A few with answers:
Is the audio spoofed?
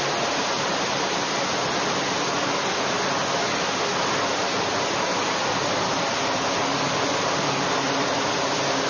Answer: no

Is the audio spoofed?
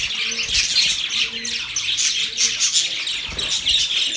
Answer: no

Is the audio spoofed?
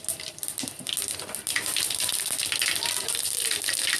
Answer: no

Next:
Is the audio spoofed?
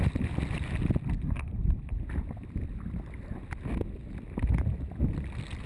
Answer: no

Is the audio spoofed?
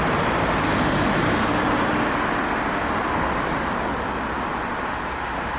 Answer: no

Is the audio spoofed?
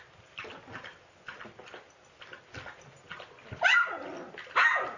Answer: no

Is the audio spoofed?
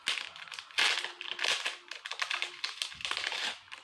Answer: no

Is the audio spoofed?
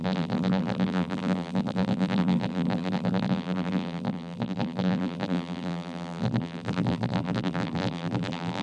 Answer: yes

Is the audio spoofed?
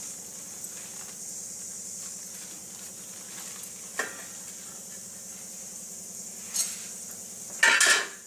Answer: no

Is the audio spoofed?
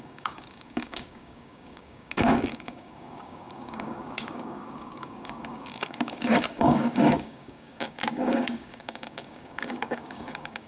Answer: yes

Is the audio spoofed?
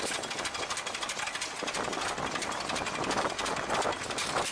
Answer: no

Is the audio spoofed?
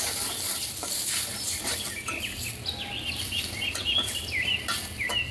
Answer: yes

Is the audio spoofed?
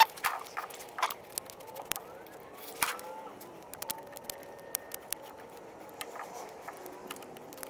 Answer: no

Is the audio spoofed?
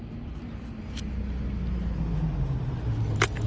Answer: no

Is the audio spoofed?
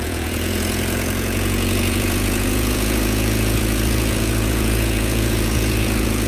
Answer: yes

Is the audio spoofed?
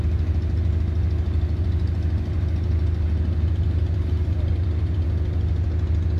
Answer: no